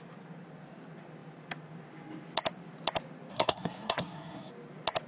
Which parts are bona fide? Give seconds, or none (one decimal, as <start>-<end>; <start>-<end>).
0.0-3.3; 4.5-5.1

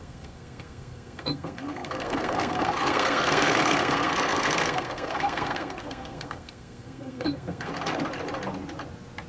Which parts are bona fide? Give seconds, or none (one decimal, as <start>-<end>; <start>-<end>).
7.7-9.3

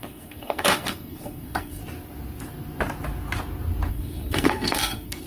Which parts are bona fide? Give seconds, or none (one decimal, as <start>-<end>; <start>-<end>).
1.8-3.9

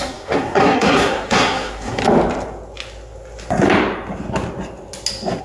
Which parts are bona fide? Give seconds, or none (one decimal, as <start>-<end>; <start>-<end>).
2.0-5.4